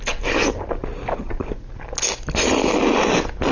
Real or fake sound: real